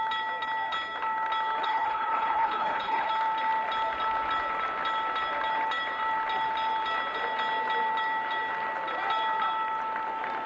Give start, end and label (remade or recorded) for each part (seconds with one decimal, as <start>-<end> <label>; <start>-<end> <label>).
0.0-1.6 recorded; 1.6-3.1 remade; 3.1-10.5 recorded